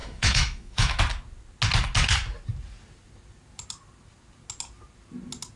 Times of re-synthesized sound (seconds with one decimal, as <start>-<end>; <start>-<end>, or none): 0.0-1.0